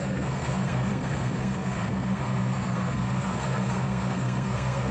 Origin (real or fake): fake